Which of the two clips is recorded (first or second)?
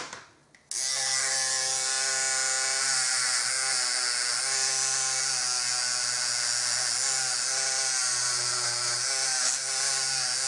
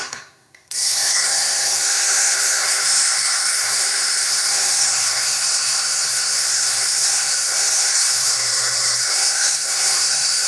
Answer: first